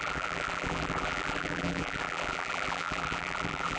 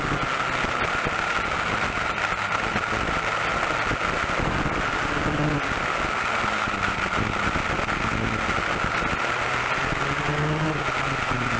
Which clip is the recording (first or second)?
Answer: second